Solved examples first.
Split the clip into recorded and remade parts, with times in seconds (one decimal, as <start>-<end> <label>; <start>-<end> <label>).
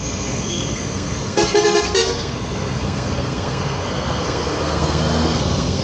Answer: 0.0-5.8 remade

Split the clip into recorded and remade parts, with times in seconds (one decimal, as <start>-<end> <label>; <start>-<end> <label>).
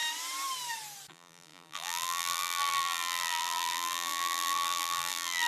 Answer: 0.0-1.1 recorded; 1.1-5.5 remade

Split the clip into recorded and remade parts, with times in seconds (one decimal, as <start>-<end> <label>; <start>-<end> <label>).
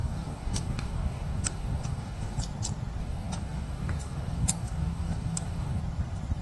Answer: 0.0-2.4 remade; 2.4-3.0 recorded; 3.0-5.8 remade; 5.8-6.4 recorded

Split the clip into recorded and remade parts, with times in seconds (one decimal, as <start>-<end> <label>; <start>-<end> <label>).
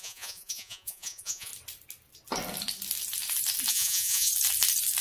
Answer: 0.0-1.5 remade; 1.5-3.7 recorded; 3.7-4.3 remade; 4.3-5.0 recorded